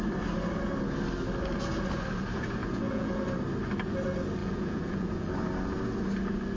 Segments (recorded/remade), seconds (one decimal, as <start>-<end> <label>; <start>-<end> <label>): 0.0-2.6 recorded; 2.6-3.2 remade; 3.2-4.4 recorded; 4.4-5.3 remade; 5.3-6.6 recorded